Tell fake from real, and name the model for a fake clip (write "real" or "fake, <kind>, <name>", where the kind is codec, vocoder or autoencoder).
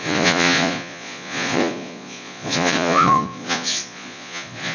fake, vocoder, Vocos